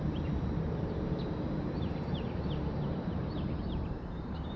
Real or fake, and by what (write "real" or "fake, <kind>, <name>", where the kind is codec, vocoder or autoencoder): fake, vocoder, BigVGAN v2